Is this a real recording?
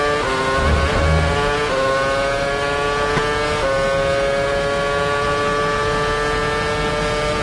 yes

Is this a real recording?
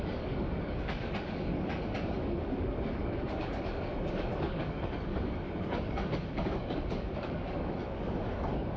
no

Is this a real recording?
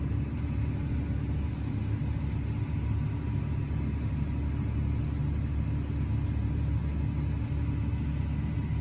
yes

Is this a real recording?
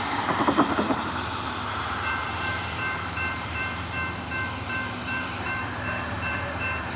no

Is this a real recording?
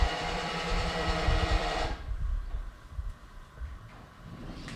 no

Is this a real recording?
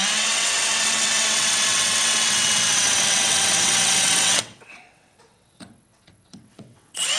no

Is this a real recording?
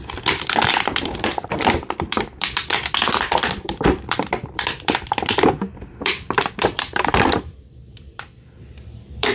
no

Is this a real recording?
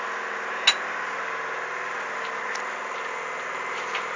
yes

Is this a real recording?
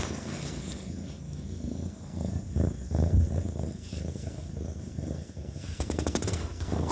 no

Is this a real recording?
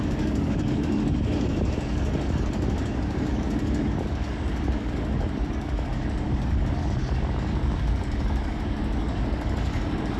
no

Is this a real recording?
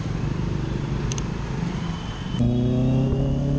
yes